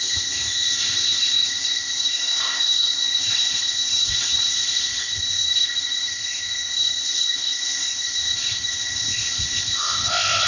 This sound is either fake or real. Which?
fake